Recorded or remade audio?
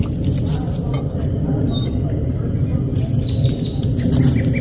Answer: recorded